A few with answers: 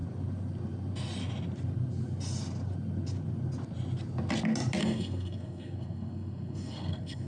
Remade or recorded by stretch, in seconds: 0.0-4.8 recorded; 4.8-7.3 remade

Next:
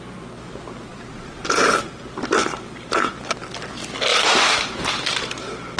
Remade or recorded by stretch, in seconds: 0.0-0.9 recorded; 0.9-1.6 remade; 1.6-2.5 recorded; 2.5-3.1 remade; 3.1-4.1 recorded; 4.1-5.0 remade; 5.0-5.8 recorded

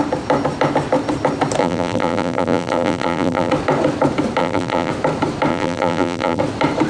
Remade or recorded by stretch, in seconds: 0.0-1.6 recorded; 1.6-3.5 remade; 3.5-4.4 recorded; 4.4-4.9 remade; 4.9-5.5 recorded; 5.5-6.4 remade; 6.4-6.9 recorded

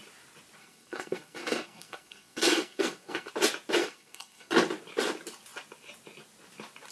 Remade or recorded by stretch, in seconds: 0.0-0.6 recorded; 0.6-3.3 remade; 3.3-3.8 recorded; 3.8-4.5 remade; 4.5-6.9 recorded

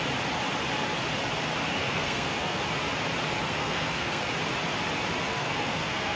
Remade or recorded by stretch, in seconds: 0.0-1.8 recorded; 1.8-2.6 remade; 2.6-3.4 recorded; 3.4-4.2 remade; 4.2-5.3 recorded; 5.3-6.2 remade

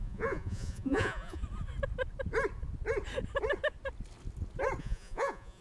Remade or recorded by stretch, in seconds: 0.0-1.4 remade; 1.4-4.8 recorded; 4.8-5.6 remade

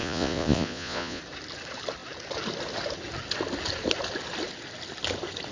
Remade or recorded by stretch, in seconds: 0.0-1.2 remade; 1.2-5.5 recorded

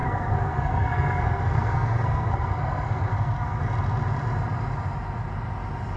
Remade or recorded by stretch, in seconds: 0.0-3.6 remade; 3.6-6.0 recorded